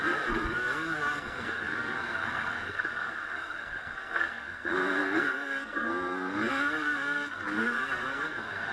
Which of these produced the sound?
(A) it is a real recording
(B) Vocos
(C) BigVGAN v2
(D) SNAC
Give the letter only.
D